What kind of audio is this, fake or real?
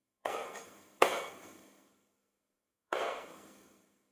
fake